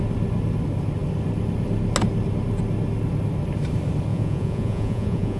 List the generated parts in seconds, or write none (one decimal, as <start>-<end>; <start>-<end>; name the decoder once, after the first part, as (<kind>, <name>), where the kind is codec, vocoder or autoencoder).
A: 4.1-5.4 (vocoder, Vocos)